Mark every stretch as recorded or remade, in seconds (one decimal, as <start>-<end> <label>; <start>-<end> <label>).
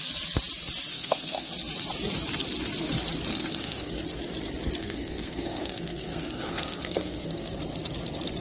0.0-0.9 recorded; 0.9-1.5 remade; 1.5-3.3 recorded; 3.3-3.9 remade; 3.9-4.8 recorded; 4.8-7.6 remade; 7.6-8.4 recorded